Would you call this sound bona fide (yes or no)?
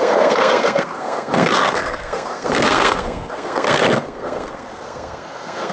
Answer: no